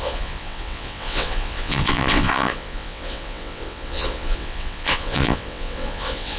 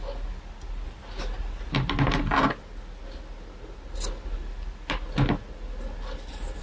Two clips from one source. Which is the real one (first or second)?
second